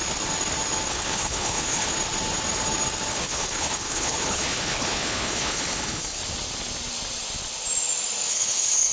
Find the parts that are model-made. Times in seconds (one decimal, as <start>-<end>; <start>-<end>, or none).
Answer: 0.9-1.9; 3.1-6.2; 8.3-8.9